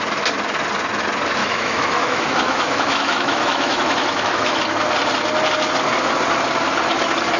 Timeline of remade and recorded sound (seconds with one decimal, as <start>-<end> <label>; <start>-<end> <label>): 0.0-1.4 recorded; 1.4-4.6 remade; 4.6-7.4 recorded